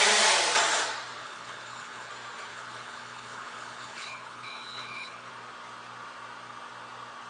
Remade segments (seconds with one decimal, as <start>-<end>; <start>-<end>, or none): 1.2-2.1; 2.5-5.3